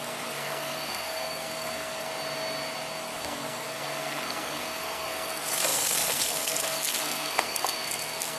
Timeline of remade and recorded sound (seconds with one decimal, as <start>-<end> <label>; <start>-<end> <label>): 0.0-2.1 remade; 2.1-3.0 recorded; 3.0-8.4 remade

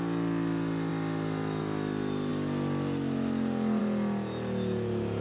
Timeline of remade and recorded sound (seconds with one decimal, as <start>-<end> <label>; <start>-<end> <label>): 0.0-5.2 recorded

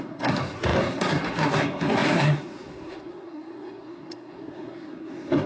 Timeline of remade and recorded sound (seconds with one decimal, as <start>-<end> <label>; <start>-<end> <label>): 0.0-5.5 remade